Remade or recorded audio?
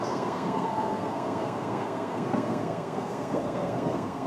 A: remade